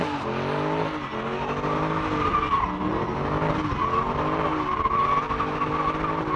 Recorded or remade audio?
recorded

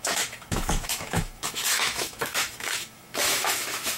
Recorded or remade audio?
remade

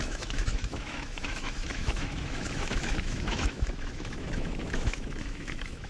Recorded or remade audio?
remade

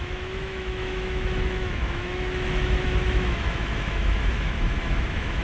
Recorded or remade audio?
remade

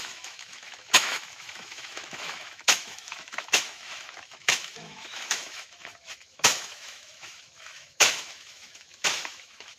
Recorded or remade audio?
remade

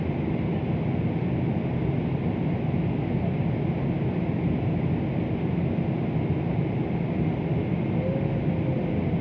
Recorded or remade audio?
recorded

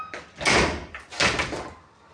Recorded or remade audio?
recorded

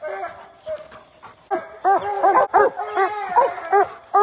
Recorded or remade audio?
recorded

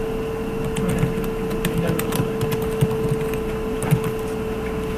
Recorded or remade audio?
recorded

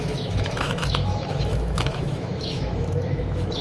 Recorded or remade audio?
remade